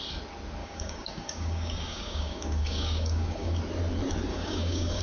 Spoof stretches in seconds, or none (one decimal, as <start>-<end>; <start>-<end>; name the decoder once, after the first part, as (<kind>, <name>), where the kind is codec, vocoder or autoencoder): 0.6-3.6 (codec, DAC); 4.3-5.0